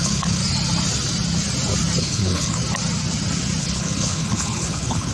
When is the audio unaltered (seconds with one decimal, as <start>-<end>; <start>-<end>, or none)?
0.4-2.0; 2.6-3.6